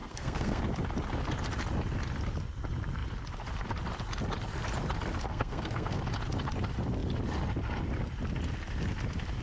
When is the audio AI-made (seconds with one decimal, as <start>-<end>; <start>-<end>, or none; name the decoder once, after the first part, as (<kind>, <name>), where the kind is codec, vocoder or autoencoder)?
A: 0.0-0.6 (codec, SNAC); 5.3-6.0